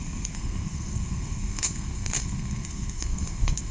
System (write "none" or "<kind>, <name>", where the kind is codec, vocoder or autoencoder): codec, SNAC